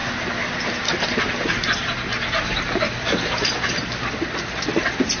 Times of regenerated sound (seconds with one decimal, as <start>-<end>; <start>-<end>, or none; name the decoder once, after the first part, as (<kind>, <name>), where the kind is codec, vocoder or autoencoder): 2.1-3.8 (vocoder, BigVGAN v2)